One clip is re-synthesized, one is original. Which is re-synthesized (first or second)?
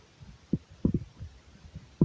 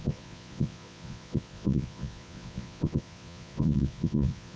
second